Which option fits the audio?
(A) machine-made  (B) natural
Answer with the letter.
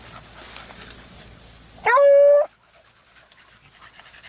B